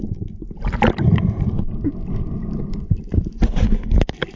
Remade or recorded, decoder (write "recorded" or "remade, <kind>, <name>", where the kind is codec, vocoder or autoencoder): recorded